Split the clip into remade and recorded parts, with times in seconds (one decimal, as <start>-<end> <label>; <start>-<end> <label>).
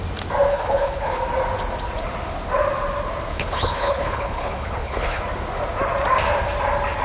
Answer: 0.0-0.5 recorded; 0.5-1.2 remade; 1.2-3.3 recorded; 3.3-5.2 remade; 5.2-7.0 recorded